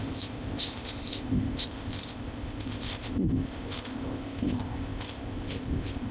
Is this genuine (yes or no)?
no